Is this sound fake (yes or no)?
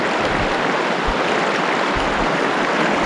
no